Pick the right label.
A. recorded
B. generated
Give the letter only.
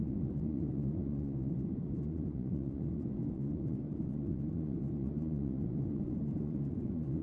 B